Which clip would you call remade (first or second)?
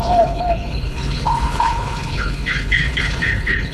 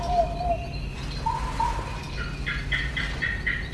first